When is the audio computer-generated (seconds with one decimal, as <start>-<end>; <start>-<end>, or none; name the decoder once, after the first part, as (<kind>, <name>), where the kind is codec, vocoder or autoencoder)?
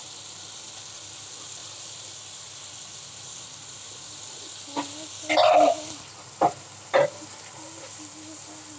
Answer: 1.6-2.7 (vocoder, BigVGAN v2)